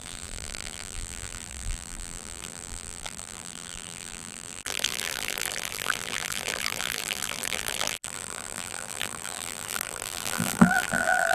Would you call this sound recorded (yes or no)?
no